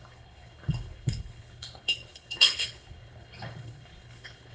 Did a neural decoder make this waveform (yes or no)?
yes